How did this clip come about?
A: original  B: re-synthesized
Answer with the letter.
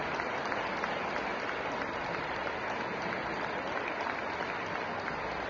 A